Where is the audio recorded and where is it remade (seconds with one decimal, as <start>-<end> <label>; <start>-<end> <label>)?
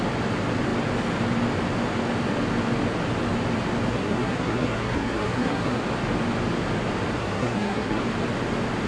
0.0-3.9 recorded; 3.9-5.8 remade; 5.8-7.2 recorded; 7.2-8.0 remade; 8.0-8.9 recorded